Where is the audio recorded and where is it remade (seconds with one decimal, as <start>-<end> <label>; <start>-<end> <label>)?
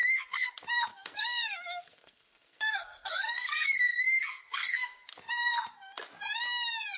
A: 0.0-0.5 remade; 0.5-0.9 recorded; 0.9-5.1 remade; 5.1-7.0 recorded